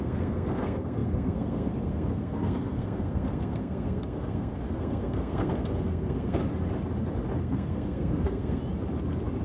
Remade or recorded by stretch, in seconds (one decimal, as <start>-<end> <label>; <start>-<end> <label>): 0.0-6.4 remade; 6.4-7.4 recorded; 7.4-8.6 remade; 8.6-9.4 recorded